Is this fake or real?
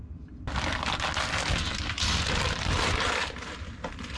real